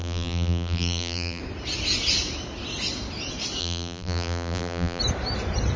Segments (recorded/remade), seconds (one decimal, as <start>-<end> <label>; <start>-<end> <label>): 0.0-1.4 remade; 1.4-3.6 recorded; 3.6-5.0 remade; 5.0-5.8 recorded